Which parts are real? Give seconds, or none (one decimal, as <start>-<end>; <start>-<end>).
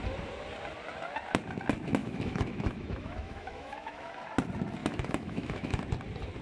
0.0-2.0; 4.1-4.8; 5.8-6.4